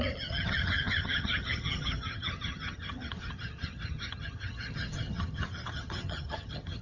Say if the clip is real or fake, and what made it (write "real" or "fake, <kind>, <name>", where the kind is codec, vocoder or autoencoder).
fake, vocoder, HiFi-GAN